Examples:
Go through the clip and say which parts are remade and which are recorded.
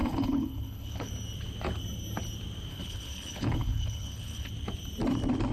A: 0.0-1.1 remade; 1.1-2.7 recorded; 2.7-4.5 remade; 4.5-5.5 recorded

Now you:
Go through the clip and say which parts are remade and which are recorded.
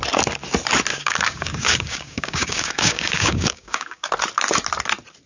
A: 0.0-0.9 recorded; 0.9-4.1 remade; 4.1-5.3 recorded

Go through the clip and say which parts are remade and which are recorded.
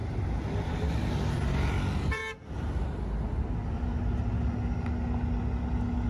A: 0.0-2.2 remade; 2.2-6.1 recorded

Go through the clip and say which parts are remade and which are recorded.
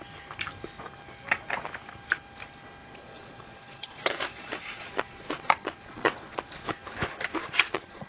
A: 0.0-2.8 recorded; 2.8-6.4 remade; 6.4-7.4 recorded; 7.4-8.1 remade